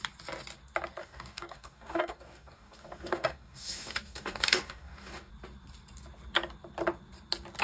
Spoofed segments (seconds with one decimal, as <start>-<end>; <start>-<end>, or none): 1.0-5.3